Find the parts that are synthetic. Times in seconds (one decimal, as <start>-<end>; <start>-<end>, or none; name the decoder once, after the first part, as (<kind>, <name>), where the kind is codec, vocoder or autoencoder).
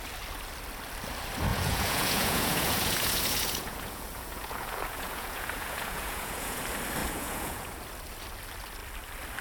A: 1.5-6.6 (vocoder, Vocos); 7.0-7.8